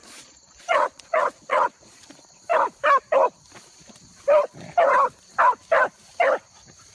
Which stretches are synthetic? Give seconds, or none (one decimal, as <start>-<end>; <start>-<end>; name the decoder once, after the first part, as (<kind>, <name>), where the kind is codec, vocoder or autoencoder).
0.0-2.1 (vocoder, Vocos)